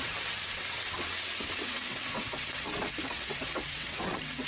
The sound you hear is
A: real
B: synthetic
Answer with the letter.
B